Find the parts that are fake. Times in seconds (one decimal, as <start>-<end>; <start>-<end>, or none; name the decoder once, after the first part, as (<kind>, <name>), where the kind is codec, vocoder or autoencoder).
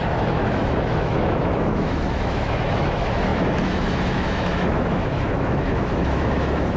0.0-6.8 (autoencoder, DAC-VAE)